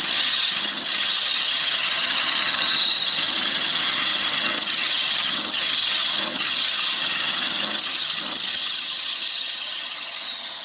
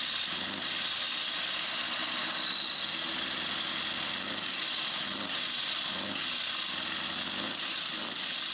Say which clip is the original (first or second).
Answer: second